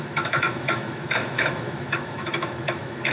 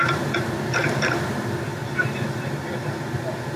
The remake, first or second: first